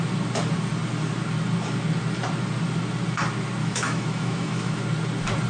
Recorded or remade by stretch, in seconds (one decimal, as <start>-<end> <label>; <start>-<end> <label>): 0.0-3.6 recorded; 3.6-4.8 remade; 4.8-5.5 recorded